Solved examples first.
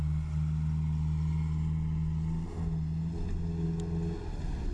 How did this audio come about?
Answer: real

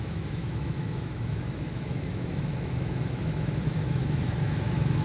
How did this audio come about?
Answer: fake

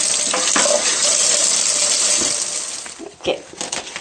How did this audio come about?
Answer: real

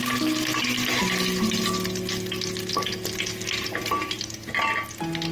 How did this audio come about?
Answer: real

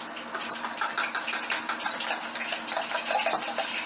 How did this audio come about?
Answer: real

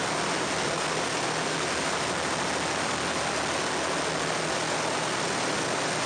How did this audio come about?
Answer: real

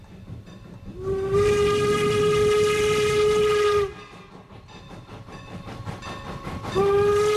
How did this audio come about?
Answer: real